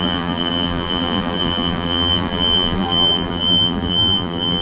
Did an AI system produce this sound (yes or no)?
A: yes